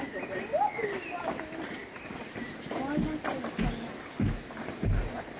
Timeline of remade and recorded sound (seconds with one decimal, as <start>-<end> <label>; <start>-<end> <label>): 0.0-5.4 recorded